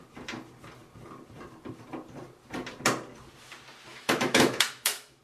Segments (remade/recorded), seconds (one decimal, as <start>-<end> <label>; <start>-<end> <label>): 0.0-3.9 recorded; 3.9-5.2 remade